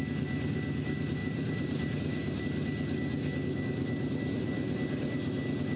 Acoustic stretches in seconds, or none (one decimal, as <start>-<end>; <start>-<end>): 0.0-1.2; 2.4-5.8